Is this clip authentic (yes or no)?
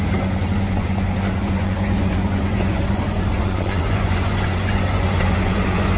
no